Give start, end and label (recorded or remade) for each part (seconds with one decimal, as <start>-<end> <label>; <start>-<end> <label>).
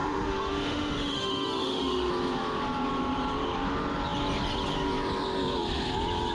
0.0-2.1 remade; 2.1-6.3 recorded